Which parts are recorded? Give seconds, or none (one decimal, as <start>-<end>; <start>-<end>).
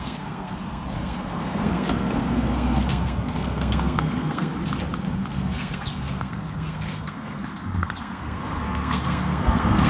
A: 4.5-5.3